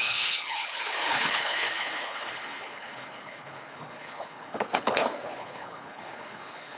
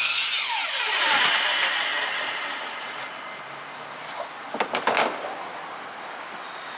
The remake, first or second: first